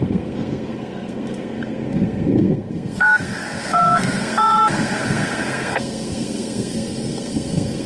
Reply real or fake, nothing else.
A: fake